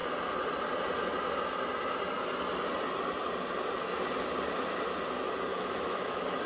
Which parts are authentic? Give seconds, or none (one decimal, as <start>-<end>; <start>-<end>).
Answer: 0.0-5.5